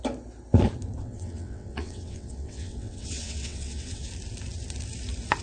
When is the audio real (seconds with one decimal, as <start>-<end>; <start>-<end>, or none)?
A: 0.0-1.0; 4.1-5.4